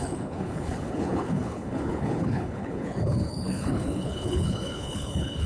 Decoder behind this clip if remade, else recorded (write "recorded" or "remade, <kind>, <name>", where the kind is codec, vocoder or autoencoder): remade, codec, HILCodec